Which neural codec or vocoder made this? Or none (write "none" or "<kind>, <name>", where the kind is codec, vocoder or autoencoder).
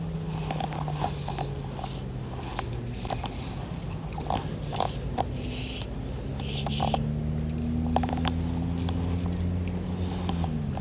none